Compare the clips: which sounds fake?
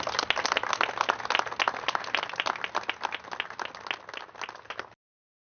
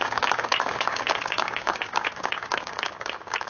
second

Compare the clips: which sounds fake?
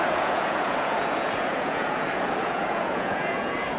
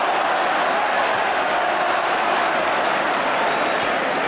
first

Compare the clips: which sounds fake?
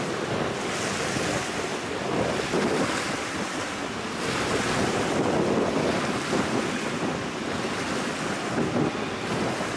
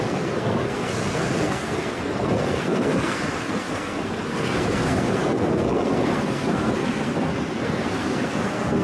second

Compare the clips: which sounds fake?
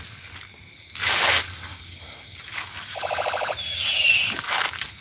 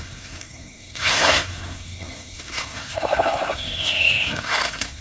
second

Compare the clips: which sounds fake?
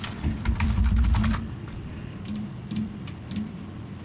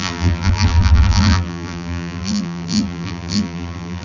second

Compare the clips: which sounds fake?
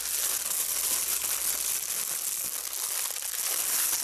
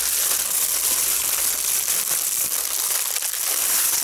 second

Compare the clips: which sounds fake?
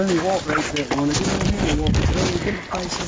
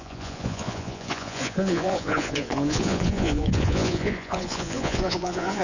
second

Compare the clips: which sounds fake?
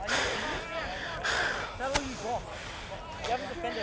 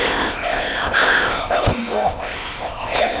second